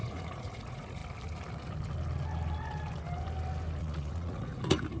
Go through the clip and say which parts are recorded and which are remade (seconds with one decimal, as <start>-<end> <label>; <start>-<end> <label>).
0.0-1.0 remade; 1.0-3.8 recorded; 3.8-5.0 remade